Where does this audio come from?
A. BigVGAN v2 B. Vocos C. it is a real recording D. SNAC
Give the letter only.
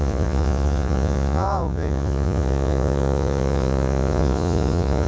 B